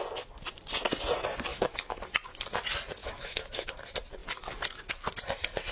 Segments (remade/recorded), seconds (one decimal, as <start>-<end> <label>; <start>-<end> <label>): 0.0-1.5 recorded; 1.5-2.0 remade; 2.0-3.0 recorded; 3.0-3.7 remade; 3.7-5.7 recorded